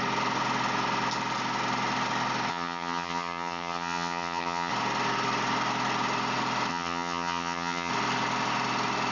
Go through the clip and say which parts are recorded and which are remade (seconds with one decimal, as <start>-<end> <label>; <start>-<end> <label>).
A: 0.0-2.5 recorded; 2.5-4.7 remade; 4.7-6.7 recorded; 6.7-7.9 remade; 7.9-9.1 recorded